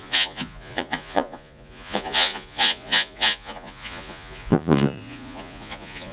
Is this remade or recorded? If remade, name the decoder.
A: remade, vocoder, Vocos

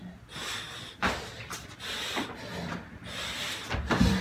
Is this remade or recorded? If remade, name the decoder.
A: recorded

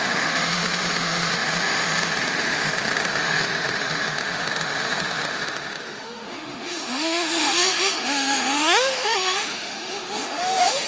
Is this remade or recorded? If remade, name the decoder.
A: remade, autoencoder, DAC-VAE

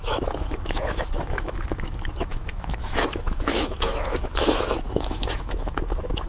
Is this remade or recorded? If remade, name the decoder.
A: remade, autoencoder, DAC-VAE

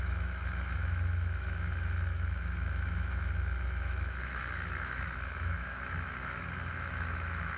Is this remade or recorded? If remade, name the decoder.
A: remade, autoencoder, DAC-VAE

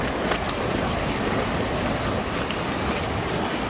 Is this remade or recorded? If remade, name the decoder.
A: recorded